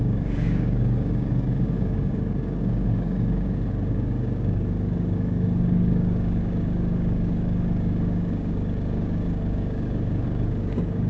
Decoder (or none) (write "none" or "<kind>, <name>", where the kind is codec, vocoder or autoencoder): codec, DAC